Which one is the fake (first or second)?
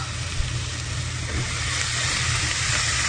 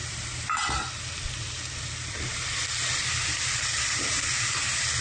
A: second